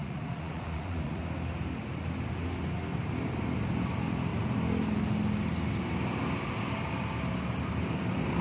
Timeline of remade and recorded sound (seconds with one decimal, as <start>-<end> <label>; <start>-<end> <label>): 0.0-1.2 remade; 1.2-8.4 recorded

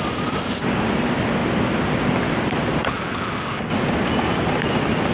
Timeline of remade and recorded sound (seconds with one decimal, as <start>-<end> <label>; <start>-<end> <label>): 0.0-5.1 recorded

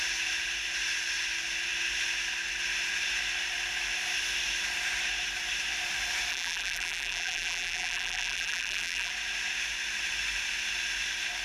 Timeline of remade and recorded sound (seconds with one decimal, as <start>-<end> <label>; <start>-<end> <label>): 0.0-6.3 recorded; 6.3-9.1 remade; 9.1-11.4 recorded

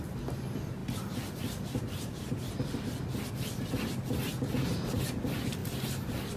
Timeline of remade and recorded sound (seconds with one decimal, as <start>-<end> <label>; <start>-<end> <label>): 0.0-6.4 recorded